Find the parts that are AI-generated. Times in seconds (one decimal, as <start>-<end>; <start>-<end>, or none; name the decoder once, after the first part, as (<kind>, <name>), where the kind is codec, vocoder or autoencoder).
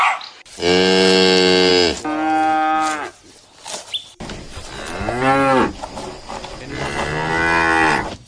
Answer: none